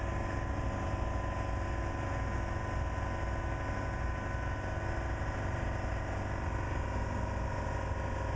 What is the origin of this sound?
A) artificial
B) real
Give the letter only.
B